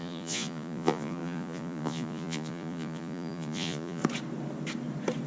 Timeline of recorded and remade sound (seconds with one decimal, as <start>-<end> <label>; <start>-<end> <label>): 0.0-4.0 remade; 4.0-5.3 recorded